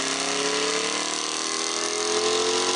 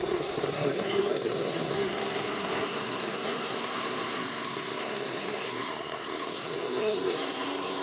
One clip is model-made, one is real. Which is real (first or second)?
first